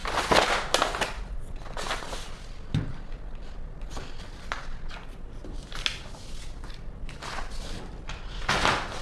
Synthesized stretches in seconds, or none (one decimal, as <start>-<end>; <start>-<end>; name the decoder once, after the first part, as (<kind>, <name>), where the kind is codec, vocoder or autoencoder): none